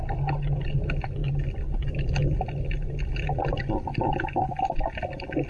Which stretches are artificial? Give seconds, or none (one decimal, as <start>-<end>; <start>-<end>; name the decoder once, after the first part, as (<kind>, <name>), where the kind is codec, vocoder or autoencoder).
none